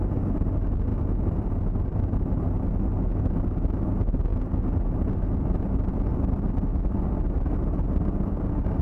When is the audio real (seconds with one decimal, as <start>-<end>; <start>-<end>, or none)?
0.0-8.8